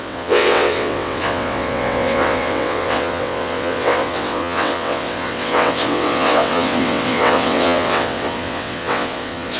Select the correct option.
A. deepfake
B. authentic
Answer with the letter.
A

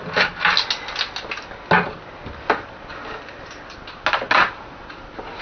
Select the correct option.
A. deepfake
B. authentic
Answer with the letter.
B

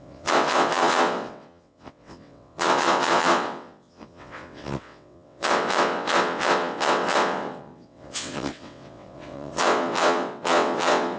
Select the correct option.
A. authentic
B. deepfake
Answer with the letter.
B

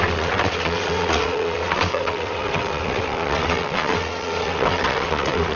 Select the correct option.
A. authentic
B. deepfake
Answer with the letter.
B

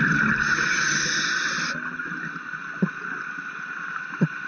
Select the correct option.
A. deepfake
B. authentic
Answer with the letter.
B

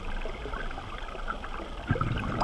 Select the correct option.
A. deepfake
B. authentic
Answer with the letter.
B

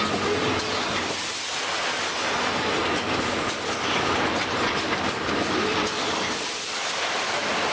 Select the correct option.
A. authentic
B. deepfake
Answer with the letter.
A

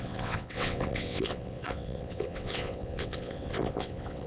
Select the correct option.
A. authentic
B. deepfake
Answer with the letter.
B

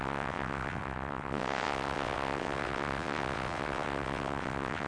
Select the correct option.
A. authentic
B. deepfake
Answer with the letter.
B